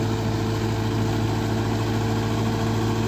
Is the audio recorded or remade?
recorded